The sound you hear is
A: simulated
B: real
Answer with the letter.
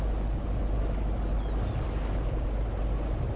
B